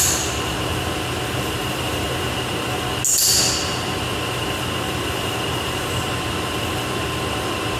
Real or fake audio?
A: real